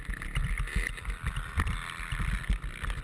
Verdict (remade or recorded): recorded